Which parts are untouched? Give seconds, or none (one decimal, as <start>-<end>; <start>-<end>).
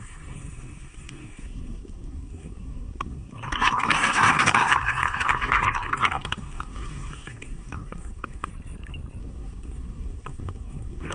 8.5-9.2